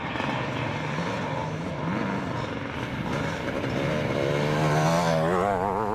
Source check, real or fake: real